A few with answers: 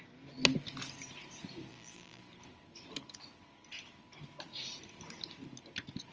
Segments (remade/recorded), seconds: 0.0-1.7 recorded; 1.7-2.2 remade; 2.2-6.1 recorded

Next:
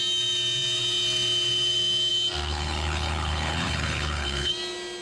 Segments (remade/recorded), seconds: 0.0-2.5 recorded; 2.5-4.5 remade; 4.5-5.0 recorded

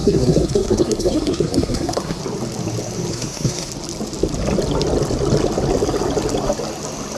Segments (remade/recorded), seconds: 0.0-2.2 remade; 2.2-3.1 recorded; 3.1-3.7 remade; 3.7-7.2 recorded

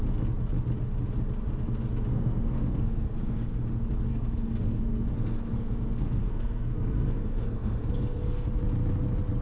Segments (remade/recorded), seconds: 0.0-2.1 recorded; 2.1-3.6 remade; 3.6-4.1 recorded; 4.1-8.5 remade; 8.5-9.4 recorded

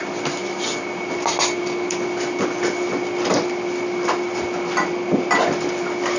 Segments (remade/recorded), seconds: 0.0-6.2 recorded

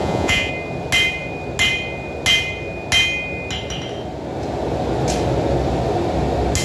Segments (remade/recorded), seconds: 0.0-0.5 remade; 0.5-6.6 recorded